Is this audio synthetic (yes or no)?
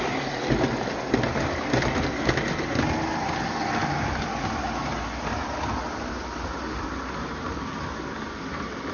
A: no